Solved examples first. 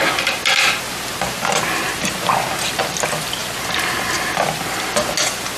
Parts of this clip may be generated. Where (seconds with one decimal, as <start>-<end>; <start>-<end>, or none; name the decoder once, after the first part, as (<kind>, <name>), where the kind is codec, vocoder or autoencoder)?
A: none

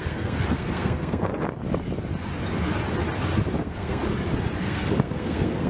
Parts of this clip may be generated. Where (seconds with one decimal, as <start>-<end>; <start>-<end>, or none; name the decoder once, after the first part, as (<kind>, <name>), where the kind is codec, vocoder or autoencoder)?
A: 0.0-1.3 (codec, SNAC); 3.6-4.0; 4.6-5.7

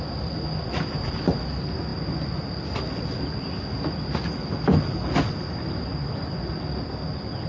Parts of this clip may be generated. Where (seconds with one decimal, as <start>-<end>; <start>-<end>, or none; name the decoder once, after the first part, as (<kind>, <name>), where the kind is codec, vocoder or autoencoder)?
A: none

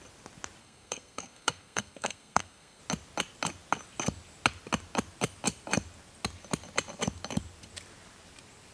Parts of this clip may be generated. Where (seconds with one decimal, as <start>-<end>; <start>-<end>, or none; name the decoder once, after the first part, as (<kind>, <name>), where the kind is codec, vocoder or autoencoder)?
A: 0.6-2.8 (codec, SNAC)